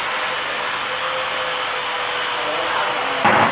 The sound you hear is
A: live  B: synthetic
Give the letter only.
A